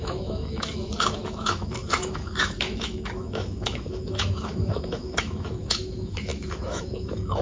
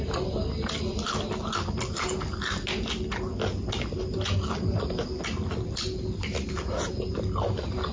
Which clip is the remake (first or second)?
first